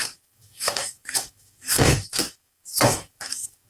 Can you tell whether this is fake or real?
fake